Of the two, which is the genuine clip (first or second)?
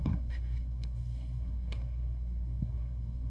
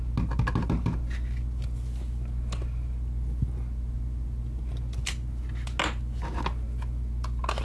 second